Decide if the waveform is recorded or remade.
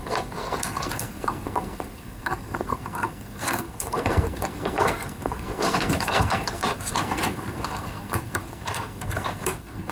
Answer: remade